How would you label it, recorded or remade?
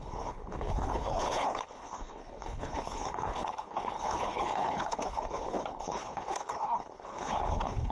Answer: remade